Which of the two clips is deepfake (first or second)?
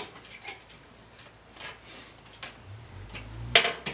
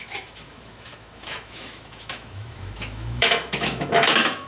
second